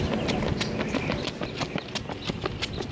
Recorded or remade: recorded